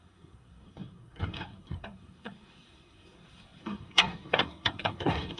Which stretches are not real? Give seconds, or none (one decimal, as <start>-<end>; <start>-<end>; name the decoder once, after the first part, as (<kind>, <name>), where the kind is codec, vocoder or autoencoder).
0.0-5.4 (codec, SNAC)

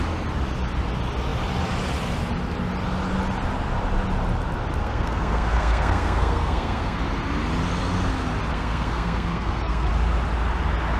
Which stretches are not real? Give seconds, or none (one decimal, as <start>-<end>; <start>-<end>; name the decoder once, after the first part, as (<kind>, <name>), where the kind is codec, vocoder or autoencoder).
4.8-7.0 (codec, SNAC); 8.5-9.9

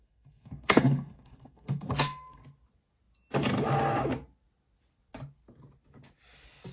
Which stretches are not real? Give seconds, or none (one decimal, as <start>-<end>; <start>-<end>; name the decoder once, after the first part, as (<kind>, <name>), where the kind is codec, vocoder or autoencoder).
0.0-2.4 (codec, SNAC)

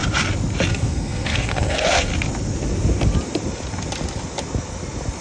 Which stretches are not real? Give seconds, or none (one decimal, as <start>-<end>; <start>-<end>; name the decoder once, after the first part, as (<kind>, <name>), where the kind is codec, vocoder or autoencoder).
0.7-2.1 (codec, SNAC)

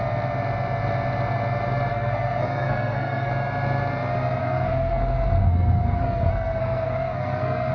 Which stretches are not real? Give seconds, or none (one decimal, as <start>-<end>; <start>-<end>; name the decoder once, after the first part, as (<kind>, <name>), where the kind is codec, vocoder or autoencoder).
1.9-3.3 (codec, SNAC); 4.4-5.0; 5.4-7.7

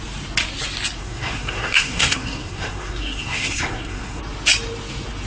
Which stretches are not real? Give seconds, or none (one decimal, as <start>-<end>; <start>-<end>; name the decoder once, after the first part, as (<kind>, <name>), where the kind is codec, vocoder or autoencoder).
1.0-4.2 (codec, SNAC)

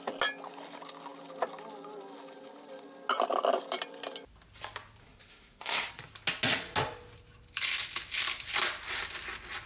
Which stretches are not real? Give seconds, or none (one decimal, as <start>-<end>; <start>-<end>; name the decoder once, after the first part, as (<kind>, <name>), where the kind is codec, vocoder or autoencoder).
5.0-5.9 (codec, SNAC)